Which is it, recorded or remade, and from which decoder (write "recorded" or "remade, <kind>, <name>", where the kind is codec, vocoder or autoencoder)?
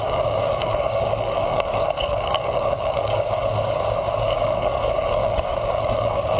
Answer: remade, codec, DAC